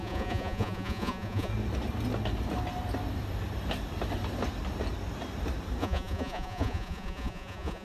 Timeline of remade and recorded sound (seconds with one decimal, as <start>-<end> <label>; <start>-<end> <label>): 0.0-1.5 remade; 1.5-5.8 recorded; 5.8-7.8 remade